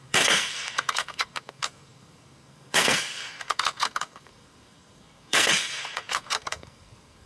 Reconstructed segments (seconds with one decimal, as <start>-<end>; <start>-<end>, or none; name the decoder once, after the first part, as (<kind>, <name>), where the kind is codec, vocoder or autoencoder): 0.0-7.3 (codec, SNAC)